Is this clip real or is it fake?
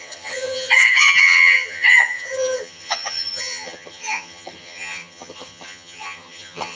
fake